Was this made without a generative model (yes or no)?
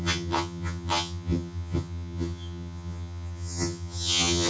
no